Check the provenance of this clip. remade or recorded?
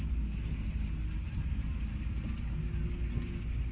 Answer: recorded